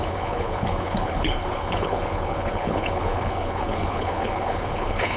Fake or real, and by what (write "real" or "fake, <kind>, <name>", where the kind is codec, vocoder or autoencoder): fake, codec, HILCodec